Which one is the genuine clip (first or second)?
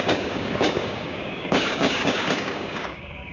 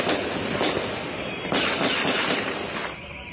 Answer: second